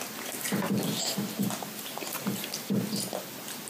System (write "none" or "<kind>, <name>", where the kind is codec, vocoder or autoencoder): none